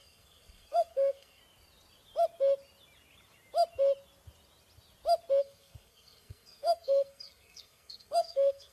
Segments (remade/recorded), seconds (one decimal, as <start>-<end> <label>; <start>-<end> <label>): 0.0-1.4 remade; 1.4-5.4 recorded; 5.4-8.7 remade